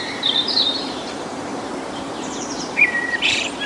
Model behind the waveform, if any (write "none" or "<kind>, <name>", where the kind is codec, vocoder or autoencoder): vocoder, BigVGAN v2